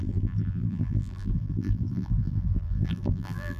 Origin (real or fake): fake